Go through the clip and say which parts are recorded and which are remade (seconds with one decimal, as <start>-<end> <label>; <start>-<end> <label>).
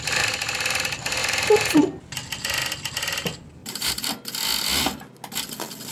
0.0-1.2 recorded; 1.2-1.8 remade; 1.8-3.6 recorded; 3.6-4.1 remade; 4.1-5.9 recorded